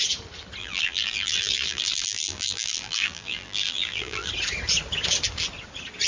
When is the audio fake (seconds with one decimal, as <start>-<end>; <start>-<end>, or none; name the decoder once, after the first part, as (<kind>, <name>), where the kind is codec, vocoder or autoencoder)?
0.6-4.3 (vocoder, BigVGAN v2)